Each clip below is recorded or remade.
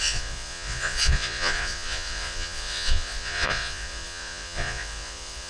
remade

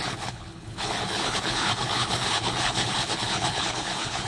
remade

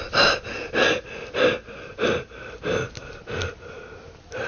recorded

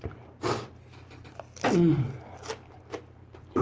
remade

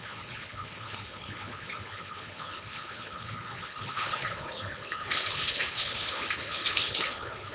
remade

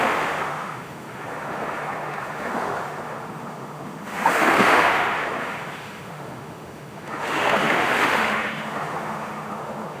remade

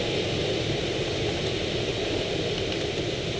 recorded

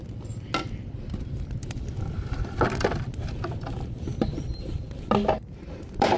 recorded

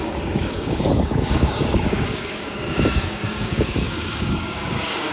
remade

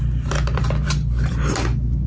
recorded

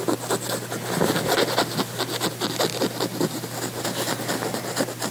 recorded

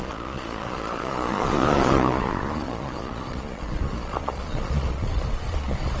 remade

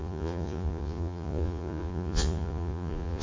remade